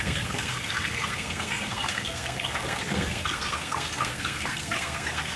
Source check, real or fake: fake